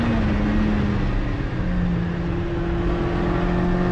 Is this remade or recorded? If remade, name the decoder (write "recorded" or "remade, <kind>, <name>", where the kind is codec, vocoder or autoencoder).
recorded